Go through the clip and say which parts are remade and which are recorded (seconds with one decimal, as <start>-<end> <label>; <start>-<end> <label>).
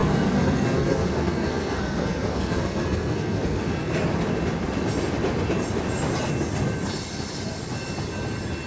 0.0-3.9 remade; 3.9-8.7 recorded